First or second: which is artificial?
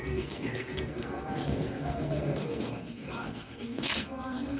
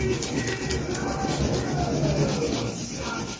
first